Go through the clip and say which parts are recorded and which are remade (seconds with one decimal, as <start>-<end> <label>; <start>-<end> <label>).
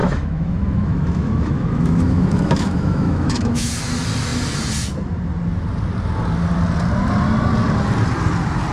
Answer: 0.0-3.7 remade; 3.7-8.7 recorded